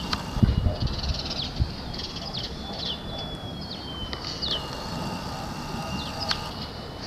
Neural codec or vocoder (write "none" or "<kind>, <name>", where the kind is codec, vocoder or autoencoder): none